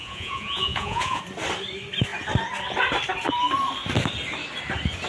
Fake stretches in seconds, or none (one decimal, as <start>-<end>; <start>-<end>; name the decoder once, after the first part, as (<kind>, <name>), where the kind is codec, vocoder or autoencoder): 0.0-1.2 (vocoder, Vocos)